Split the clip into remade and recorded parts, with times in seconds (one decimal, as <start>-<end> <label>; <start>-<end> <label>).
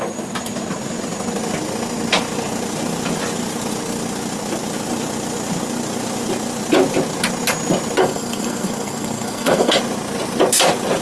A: 0.0-8.0 recorded; 8.0-9.8 remade; 9.8-11.0 recorded